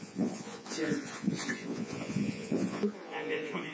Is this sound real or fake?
fake